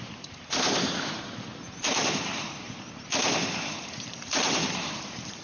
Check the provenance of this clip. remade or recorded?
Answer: remade